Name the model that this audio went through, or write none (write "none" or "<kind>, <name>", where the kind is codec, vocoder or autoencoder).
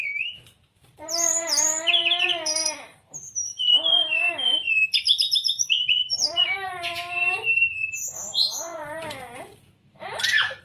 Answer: vocoder, BigVGAN v2